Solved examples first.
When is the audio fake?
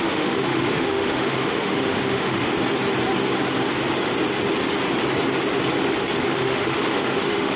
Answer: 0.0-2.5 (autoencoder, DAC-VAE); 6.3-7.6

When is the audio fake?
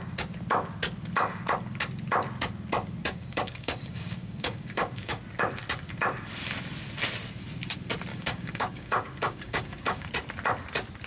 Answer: 3.0-5.2 (codec, DAC); 8.1-10.1